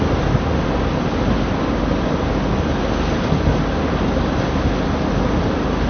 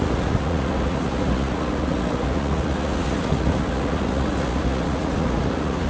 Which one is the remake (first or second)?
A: second